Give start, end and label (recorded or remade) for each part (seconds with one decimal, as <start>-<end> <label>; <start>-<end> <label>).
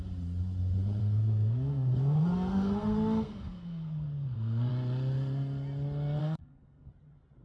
0.0-1.0 recorded; 1.0-4.7 remade; 4.7-6.2 recorded; 6.2-6.9 remade; 6.9-7.4 recorded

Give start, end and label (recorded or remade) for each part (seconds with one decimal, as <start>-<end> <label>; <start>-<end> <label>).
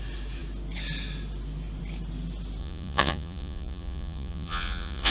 0.0-2.6 recorded; 2.6-5.1 remade